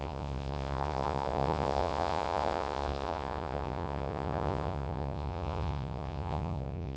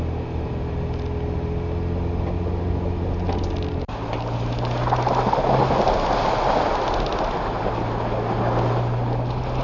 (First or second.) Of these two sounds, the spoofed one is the first